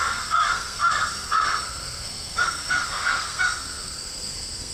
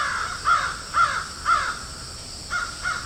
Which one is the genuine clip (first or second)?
second